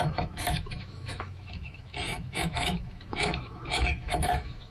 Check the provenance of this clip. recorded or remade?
remade